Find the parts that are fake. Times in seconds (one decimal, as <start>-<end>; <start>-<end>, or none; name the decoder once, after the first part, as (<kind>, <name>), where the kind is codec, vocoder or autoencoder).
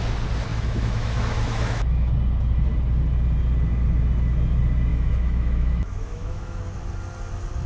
0.5-2.1 (autoencoder, DAC-VAE); 4.9-6.6